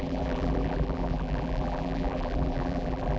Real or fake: fake